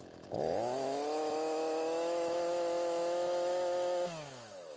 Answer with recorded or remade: remade